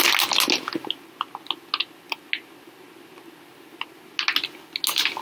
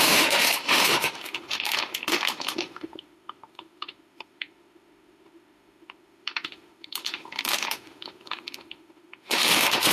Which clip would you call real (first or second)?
first